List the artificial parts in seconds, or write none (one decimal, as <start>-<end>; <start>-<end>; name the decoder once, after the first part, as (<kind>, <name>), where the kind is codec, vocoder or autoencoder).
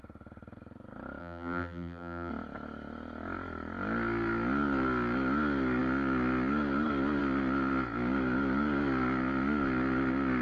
1.2-2.3 (vocoder, BigVGAN v2)